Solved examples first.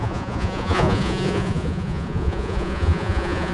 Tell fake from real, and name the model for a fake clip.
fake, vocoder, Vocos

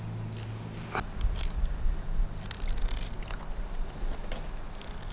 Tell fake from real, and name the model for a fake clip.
real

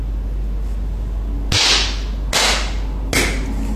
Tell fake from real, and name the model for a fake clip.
real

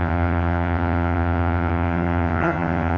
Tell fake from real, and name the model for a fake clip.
fake, vocoder, HiFi-GAN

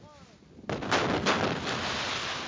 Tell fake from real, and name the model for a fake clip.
real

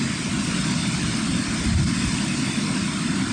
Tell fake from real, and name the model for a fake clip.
real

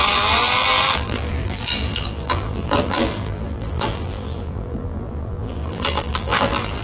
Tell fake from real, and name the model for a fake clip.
fake, vocoder, BigVGAN v2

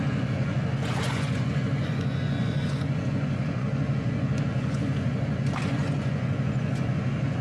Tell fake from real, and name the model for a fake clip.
fake, vocoder, Vocos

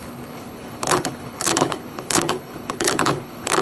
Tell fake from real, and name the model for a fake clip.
fake, codec, HILCodec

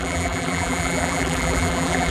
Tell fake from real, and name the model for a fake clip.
fake, vocoder, BigVGAN v2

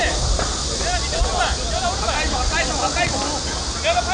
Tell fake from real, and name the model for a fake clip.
real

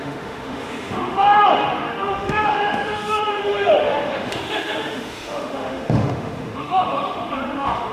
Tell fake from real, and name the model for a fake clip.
fake, autoencoder, DAC-VAE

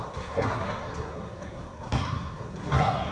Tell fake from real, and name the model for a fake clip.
fake, codec, SNAC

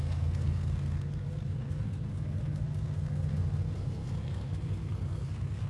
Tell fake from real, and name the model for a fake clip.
fake, codec, SNAC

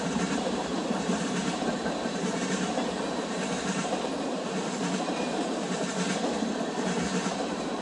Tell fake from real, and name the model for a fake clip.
fake, vocoder, BigVGAN v2